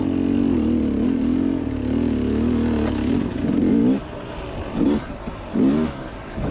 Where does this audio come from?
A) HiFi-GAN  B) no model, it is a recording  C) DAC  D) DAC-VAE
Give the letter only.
B